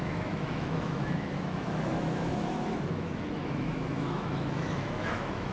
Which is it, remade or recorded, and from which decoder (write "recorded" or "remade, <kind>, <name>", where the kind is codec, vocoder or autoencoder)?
remade, autoencoder, DAC-VAE